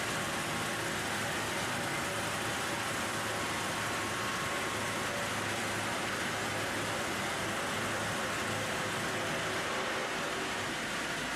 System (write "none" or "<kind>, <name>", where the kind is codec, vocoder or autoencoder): none